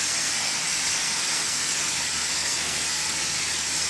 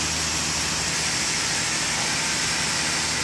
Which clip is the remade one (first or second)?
first